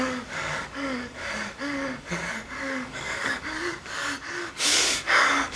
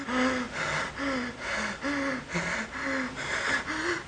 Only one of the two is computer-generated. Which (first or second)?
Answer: first